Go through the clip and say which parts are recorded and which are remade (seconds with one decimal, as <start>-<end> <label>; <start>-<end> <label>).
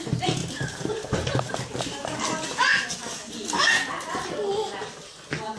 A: 0.0-0.4 recorded; 0.4-1.4 remade; 1.4-5.6 recorded